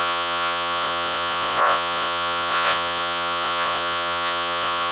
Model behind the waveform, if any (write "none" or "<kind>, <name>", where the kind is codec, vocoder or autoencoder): vocoder, Vocos